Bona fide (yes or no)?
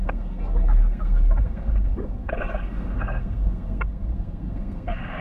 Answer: no